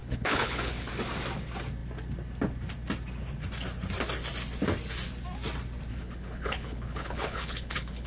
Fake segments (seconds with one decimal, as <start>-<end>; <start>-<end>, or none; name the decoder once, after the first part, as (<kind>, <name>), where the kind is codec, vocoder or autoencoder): 0.0-0.9 (codec, HILCodec); 5.9-8.1